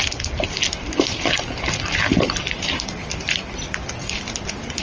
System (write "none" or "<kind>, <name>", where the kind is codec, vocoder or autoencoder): none